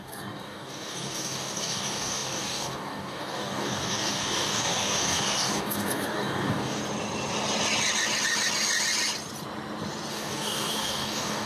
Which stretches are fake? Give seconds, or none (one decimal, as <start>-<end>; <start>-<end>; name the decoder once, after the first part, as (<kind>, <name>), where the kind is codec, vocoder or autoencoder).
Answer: 0.0-6.8 (codec, DAC); 10.1-11.5